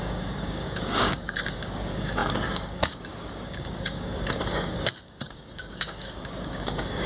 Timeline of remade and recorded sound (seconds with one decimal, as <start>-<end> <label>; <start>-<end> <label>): 0.0-7.1 remade